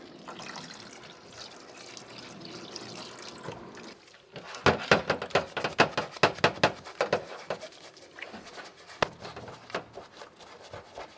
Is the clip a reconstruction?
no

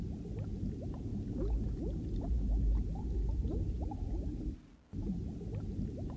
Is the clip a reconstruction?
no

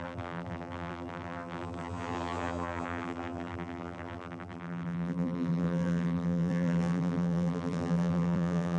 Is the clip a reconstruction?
yes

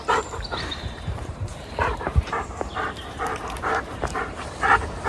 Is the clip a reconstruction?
yes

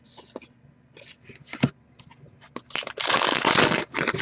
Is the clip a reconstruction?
no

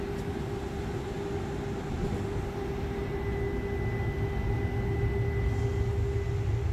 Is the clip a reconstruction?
no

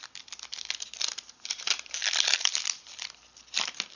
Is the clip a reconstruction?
yes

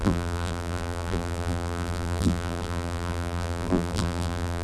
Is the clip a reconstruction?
yes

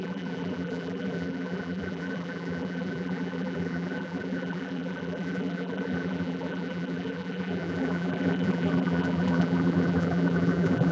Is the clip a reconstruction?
yes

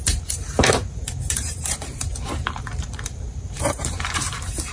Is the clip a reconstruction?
yes